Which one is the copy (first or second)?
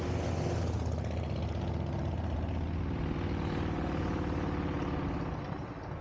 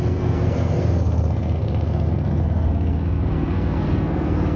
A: second